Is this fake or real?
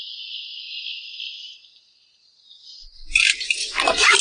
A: real